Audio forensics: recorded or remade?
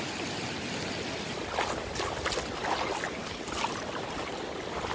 recorded